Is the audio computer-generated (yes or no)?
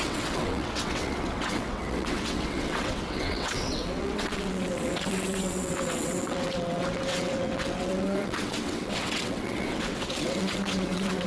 yes